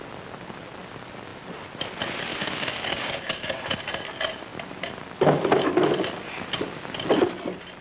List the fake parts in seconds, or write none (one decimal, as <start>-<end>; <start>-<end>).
2.3-3.1